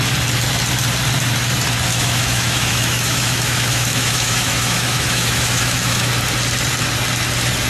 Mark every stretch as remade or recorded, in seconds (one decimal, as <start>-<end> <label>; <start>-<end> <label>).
0.0-1.9 recorded; 1.9-6.1 remade; 6.1-7.7 recorded